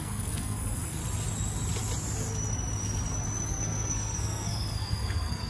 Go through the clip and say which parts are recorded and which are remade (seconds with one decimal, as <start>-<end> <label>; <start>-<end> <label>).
0.0-1.0 remade; 1.0-3.5 recorded; 3.5-5.5 remade